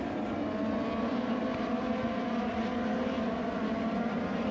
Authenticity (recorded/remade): recorded